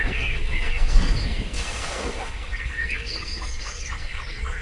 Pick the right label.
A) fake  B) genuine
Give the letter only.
A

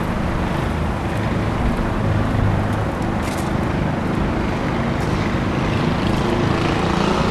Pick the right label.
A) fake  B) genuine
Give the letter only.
B